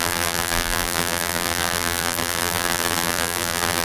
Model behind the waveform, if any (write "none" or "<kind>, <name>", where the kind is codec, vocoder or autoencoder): vocoder, BigVGAN v2